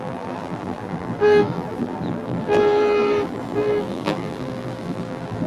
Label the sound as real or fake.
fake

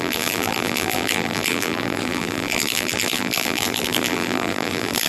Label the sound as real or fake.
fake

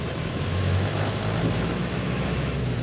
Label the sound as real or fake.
fake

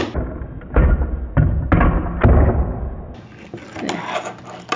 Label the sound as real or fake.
real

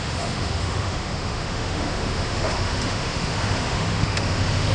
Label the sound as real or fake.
fake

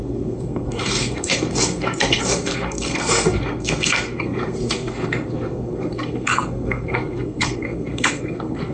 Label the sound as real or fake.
fake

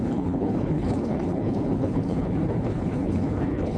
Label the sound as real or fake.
fake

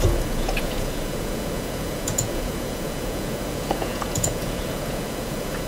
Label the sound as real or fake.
fake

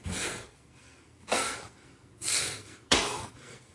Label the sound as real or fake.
fake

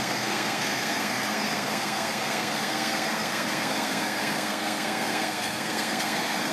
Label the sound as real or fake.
fake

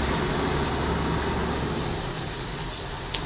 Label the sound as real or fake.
real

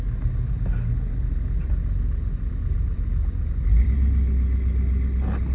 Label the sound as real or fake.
real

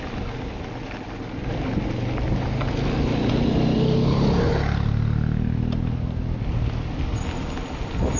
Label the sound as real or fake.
real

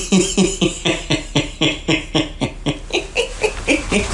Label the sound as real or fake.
real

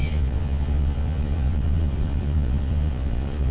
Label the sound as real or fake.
fake